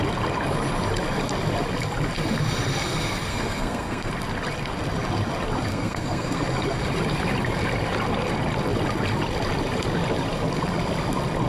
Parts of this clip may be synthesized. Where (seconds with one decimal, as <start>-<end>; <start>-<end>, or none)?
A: 3.3-4.1; 5.7-6.4